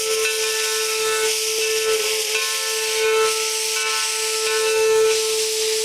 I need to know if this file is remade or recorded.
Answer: recorded